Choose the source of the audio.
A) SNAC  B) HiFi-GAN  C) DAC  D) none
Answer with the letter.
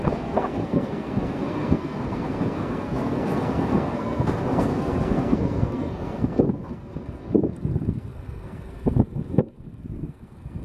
A